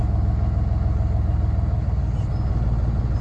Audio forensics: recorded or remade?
recorded